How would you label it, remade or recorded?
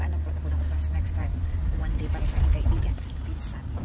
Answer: recorded